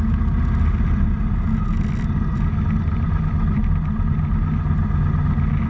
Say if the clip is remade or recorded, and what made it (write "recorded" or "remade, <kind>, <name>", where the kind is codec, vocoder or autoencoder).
recorded